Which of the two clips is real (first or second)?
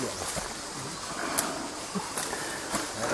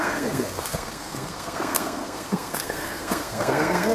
first